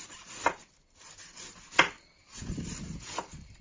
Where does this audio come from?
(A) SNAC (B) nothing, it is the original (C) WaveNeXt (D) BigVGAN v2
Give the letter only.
B